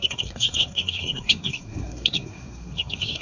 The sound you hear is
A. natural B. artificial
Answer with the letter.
B